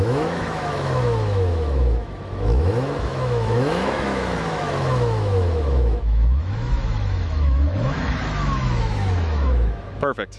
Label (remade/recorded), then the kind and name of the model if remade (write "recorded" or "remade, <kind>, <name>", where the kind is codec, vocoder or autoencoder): remade, autoencoder, DAC-VAE